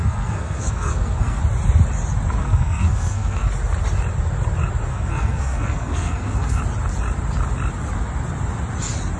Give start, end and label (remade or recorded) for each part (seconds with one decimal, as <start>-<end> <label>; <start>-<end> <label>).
0.0-1.4 remade; 1.4-2.4 recorded; 2.4-3.5 remade; 3.5-4.9 recorded; 4.9-6.6 remade; 6.6-9.2 recorded